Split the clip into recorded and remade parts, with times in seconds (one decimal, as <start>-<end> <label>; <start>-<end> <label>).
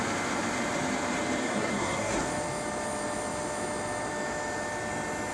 0.0-1.4 recorded; 1.4-2.2 remade; 2.2-5.3 recorded